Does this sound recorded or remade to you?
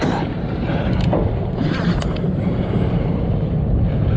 remade